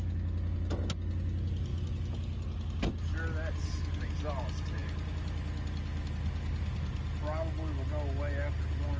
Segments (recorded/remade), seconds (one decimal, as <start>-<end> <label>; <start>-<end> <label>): 0.0-9.0 recorded